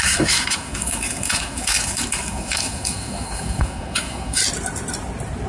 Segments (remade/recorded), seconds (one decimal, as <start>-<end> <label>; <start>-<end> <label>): 0.0-4.4 remade; 4.4-5.5 recorded